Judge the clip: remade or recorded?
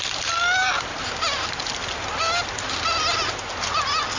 recorded